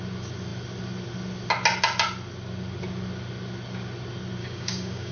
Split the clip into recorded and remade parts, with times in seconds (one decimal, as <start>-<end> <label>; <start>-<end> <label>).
0.0-4.4 recorded; 4.4-5.1 remade